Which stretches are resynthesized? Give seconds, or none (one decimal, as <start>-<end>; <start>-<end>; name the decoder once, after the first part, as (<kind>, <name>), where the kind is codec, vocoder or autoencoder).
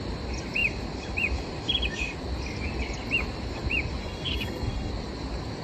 4.0-4.9 (codec, SNAC)